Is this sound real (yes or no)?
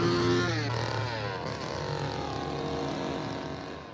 yes